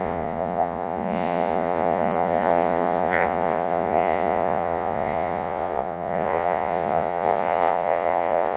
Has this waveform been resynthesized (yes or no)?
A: yes